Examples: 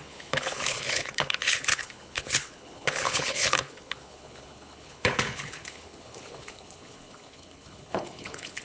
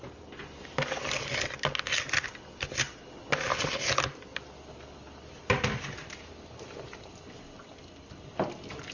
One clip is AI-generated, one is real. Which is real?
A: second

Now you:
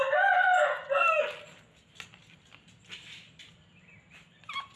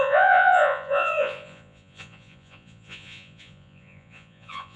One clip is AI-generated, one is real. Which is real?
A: first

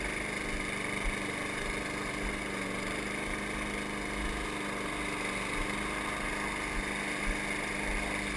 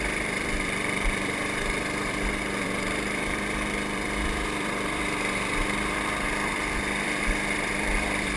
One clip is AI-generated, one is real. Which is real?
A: first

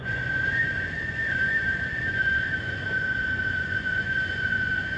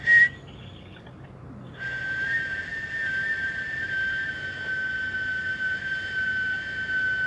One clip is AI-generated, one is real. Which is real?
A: second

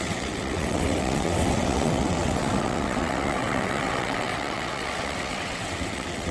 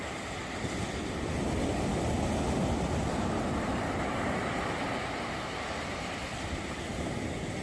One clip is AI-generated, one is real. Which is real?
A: second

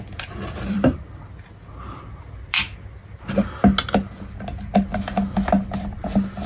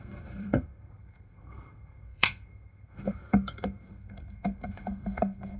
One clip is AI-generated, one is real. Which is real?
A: first